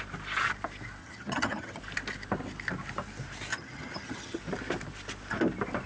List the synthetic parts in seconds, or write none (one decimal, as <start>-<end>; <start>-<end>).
1.0-1.8; 3.5-4.4